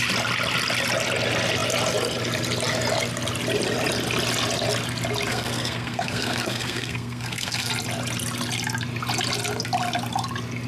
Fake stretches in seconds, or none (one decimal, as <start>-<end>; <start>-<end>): 5.3-7.7